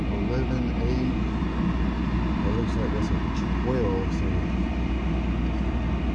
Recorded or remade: recorded